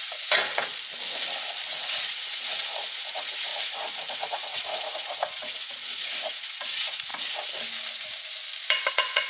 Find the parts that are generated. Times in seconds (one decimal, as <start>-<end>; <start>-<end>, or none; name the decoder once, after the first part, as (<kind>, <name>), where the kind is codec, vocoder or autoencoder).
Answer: 0.0-0.7 (vocoder, Vocos); 1.7-3.5; 4.1-7.1; 8.9-9.3